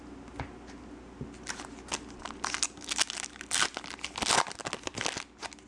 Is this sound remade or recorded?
recorded